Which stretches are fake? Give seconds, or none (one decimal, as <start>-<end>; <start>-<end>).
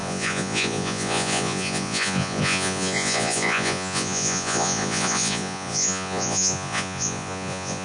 0.0-7.8